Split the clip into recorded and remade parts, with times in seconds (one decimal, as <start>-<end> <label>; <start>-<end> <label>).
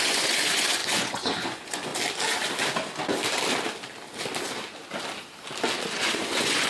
0.0-1.9 remade; 1.9-5.9 recorded; 5.9-6.7 remade